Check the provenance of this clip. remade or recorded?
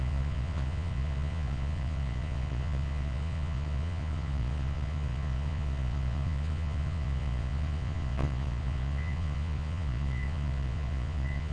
remade